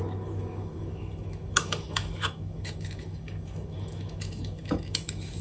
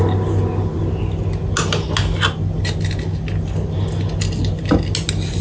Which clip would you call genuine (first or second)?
second